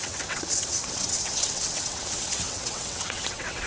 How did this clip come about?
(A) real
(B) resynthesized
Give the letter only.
B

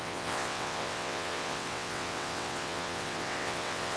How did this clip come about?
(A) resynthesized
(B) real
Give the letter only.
A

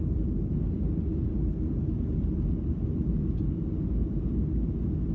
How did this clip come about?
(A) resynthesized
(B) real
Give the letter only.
B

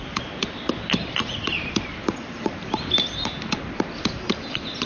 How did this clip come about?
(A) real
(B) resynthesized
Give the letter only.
A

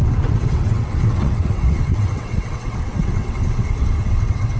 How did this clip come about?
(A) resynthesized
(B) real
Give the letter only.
A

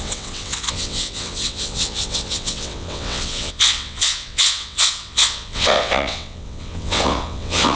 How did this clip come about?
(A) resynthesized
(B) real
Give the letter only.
A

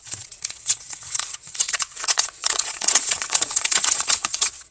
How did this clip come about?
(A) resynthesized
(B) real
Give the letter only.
A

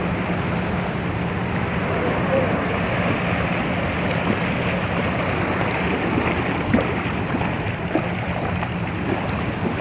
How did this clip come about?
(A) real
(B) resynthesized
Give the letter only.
A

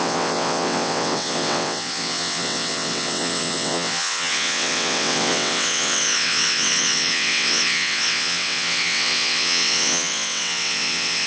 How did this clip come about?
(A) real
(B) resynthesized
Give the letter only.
B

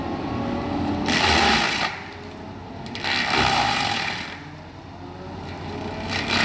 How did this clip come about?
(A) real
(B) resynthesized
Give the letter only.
A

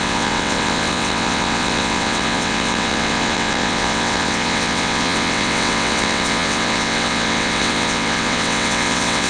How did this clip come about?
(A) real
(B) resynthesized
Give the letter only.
B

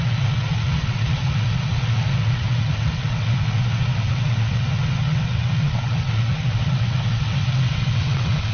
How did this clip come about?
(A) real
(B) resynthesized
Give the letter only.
B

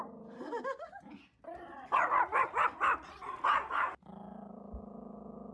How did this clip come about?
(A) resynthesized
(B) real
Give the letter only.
B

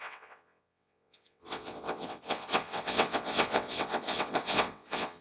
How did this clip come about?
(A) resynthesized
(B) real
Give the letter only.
A